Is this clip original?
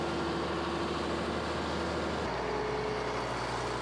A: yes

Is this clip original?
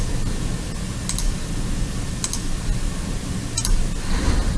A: yes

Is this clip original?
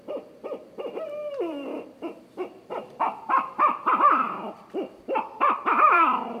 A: no